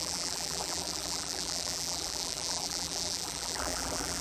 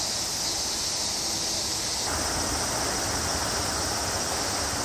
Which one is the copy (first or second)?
first